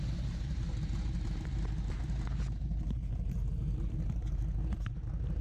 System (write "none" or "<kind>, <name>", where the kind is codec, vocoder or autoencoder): vocoder, BigVGAN v2